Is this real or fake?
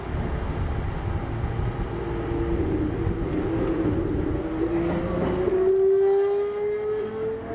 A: real